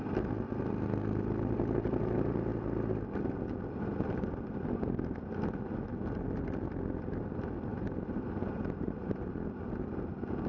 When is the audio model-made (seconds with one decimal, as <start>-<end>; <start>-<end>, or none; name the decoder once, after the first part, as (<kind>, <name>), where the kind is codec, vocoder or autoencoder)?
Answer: 7.7-9.3 (vocoder, BigVGAN v2)